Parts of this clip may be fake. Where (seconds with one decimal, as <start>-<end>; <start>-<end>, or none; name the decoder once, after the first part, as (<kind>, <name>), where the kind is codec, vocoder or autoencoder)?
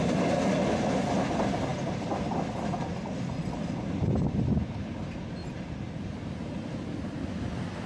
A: none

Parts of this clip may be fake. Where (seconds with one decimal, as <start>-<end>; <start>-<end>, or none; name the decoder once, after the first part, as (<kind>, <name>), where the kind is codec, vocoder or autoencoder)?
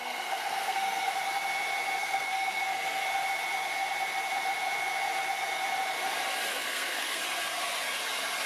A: 0.0-1.1 (codec, SNAC); 2.0-3.0; 6.5-7.2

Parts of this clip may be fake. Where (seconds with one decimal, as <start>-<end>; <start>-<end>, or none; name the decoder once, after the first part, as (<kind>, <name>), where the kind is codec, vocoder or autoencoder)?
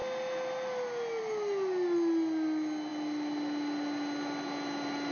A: none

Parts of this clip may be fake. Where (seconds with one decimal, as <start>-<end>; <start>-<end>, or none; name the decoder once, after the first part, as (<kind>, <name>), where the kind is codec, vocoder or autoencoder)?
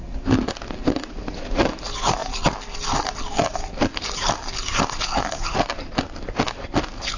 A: none